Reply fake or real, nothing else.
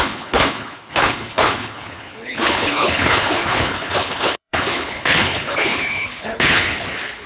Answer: fake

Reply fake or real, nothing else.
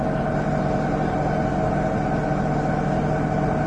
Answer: real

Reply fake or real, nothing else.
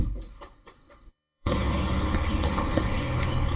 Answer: fake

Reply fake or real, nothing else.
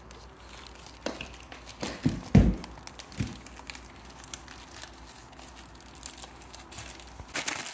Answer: real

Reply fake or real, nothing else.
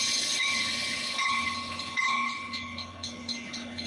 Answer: fake